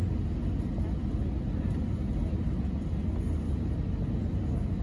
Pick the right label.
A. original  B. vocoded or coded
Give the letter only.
A